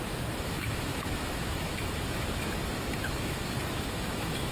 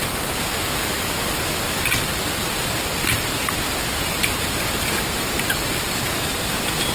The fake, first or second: first